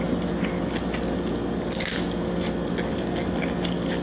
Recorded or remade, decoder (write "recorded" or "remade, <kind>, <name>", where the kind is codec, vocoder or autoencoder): recorded